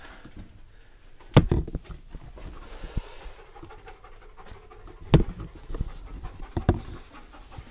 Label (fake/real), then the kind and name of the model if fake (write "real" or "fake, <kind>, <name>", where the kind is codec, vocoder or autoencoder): real